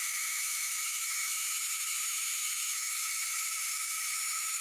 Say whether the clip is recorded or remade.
remade